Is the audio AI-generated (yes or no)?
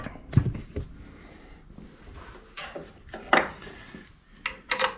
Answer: no